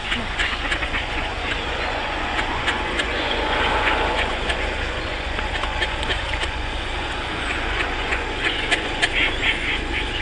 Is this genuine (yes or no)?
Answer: no